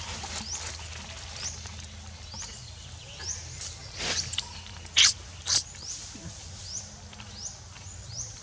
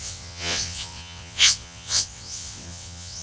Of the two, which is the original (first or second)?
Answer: first